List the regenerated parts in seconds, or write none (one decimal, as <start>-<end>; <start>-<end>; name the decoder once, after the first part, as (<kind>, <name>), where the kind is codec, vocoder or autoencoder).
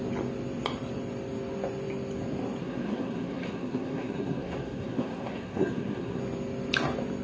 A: 2.6-6.2 (codec, SNAC)